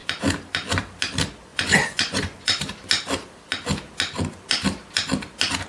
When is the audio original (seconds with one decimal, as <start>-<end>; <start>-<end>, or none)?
0.0-1.5; 2.6-5.7